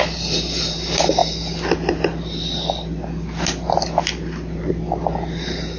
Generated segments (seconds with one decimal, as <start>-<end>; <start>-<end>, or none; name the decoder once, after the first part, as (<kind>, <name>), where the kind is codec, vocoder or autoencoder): none

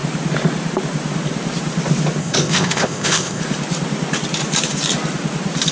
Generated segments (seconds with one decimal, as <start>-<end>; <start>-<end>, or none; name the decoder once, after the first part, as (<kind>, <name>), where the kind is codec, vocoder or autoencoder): 2.2-3.4 (codec, ZipCodec)

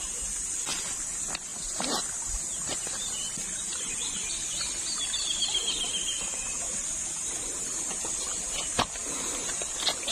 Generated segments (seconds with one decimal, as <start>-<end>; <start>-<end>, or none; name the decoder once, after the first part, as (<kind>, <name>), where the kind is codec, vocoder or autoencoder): none

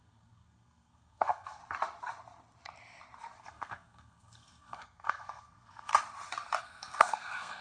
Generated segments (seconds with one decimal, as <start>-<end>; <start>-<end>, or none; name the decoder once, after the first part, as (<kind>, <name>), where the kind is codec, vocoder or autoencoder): 0.0-1.6 (codec, SNAC); 3.4-5.9; 6.6-7.6

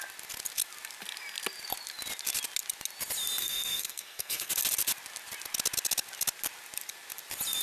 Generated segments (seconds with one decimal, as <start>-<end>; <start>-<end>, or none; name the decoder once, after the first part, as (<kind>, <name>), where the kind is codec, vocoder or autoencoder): 3.4-4.5 (codec, SNAC)

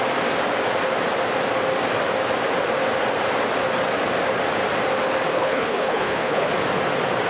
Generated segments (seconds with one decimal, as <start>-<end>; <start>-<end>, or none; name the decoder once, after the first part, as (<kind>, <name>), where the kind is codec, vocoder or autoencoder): 5.3-6.5 (codec, HILCodec)